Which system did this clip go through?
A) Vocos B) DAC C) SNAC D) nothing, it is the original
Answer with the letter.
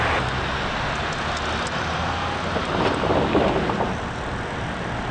D